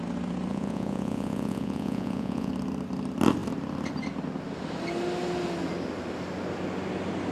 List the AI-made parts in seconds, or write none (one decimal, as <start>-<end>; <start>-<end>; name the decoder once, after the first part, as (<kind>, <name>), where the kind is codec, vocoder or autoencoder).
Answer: 0.5-2.5 (vocoder, Vocos)